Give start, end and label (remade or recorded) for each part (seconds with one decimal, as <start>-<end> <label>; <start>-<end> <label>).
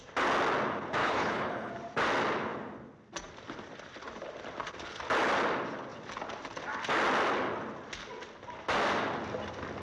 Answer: 0.0-1.0 recorded; 1.0-1.7 remade; 1.7-9.8 recorded